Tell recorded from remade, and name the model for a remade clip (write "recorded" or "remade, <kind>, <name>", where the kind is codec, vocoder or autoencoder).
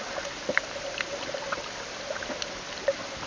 recorded